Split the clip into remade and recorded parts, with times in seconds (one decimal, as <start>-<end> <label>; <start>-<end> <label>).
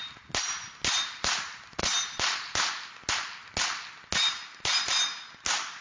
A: 0.0-5.8 recorded